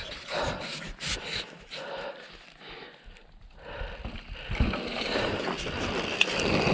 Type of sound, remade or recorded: recorded